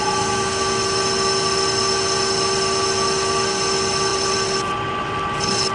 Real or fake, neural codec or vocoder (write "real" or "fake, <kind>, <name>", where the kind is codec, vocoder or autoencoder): real